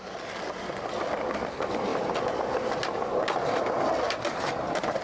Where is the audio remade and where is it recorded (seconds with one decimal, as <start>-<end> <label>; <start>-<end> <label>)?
0.0-1.9 remade; 1.9-4.2 recorded; 4.2-5.0 remade